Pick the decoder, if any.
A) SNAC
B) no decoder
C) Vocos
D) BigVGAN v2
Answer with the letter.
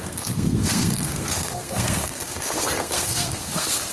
A